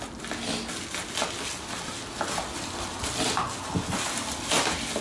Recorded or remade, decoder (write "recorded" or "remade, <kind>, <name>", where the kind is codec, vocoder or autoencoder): recorded